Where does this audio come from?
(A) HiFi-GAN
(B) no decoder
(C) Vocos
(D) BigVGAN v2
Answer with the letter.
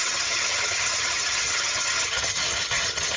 A